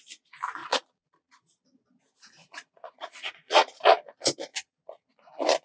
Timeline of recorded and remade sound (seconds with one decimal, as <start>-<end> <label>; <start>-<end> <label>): 0.0-0.6 recorded; 0.6-2.0 remade; 2.0-2.4 recorded; 2.4-3.7 remade; 3.7-4.5 recorded; 4.5-5.1 remade; 5.1-5.6 recorded